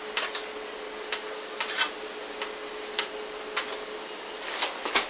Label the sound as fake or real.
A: real